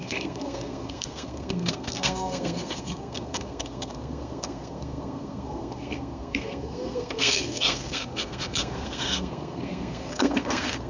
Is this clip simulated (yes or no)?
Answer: yes